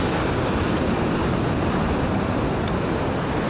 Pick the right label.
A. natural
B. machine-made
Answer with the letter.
A